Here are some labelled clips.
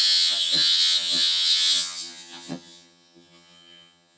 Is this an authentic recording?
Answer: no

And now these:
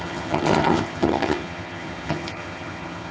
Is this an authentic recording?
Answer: no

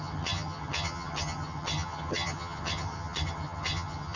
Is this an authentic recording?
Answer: no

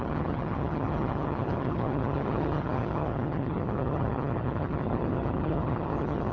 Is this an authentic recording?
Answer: no